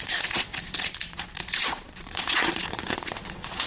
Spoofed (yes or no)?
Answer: yes